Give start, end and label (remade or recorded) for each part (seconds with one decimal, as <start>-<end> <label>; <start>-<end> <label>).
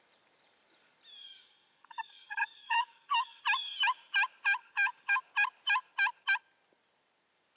0.0-1.2 recorded; 1.2-3.4 remade; 3.4-4.6 recorded; 4.6-5.2 remade; 5.2-7.6 recorded